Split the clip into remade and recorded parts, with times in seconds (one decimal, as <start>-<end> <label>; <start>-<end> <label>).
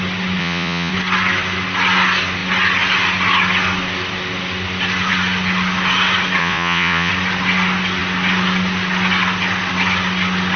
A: 0.0-0.4 recorded; 0.4-0.9 remade; 0.9-6.4 recorded; 6.4-7.1 remade; 7.1-10.6 recorded